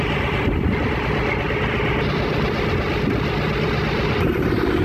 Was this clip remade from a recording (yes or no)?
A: no